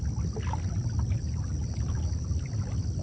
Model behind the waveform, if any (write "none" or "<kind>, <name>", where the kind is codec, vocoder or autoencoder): none